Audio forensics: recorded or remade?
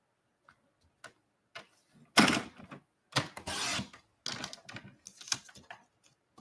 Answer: recorded